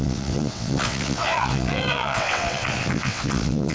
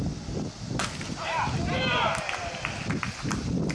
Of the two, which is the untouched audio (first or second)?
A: second